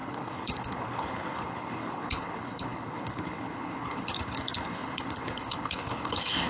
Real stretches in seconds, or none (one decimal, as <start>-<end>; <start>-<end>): none